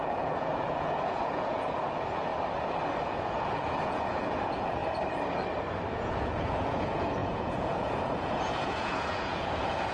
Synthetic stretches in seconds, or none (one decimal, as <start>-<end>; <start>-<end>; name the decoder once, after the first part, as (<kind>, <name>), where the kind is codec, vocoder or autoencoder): 0.0-2.3 (vocoder, Vocos); 3.0-4.8; 5.9-9.9